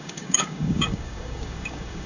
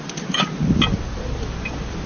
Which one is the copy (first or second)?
first